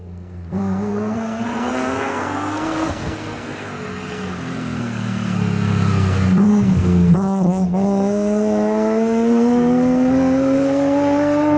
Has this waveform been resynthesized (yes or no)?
yes